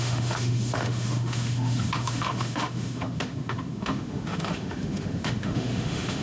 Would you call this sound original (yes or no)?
no